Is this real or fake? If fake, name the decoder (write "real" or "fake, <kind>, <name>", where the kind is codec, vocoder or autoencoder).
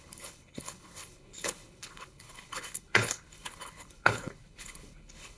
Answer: fake, codec, HILCodec